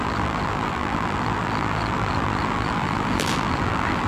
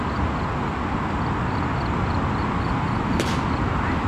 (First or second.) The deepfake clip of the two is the first